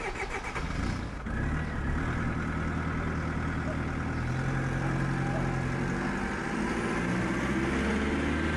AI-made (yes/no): no